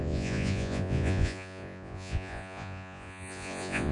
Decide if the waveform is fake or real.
fake